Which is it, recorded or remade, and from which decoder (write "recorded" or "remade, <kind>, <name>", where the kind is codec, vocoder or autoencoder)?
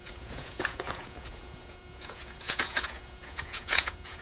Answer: remade, vocoder, Vocos